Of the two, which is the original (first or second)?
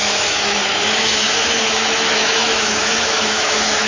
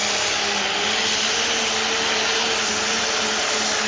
second